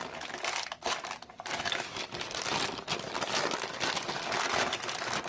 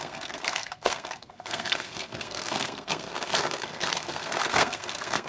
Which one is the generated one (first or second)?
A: second